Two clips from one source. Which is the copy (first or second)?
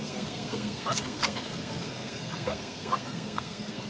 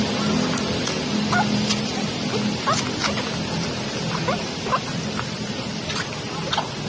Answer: first